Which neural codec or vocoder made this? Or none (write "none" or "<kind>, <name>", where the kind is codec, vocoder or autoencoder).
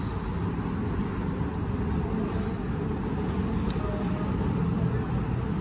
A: none